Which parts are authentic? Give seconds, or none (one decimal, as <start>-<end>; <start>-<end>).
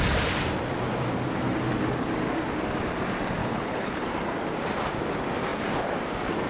0.0-3.4; 4.0-6.5